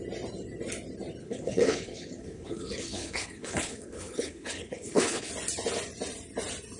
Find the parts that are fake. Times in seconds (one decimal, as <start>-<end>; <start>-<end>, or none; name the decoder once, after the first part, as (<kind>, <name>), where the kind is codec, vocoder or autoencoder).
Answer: 1.2-5.3 (codec, HILCodec)